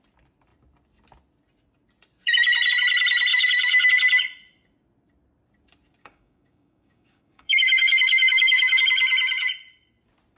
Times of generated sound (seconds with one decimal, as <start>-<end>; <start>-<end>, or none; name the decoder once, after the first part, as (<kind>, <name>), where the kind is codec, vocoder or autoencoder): 3.3-3.9 (codec, DAC); 6.0-8.8